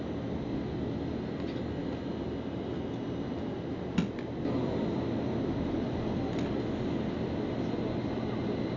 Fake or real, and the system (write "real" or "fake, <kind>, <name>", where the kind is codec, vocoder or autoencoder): real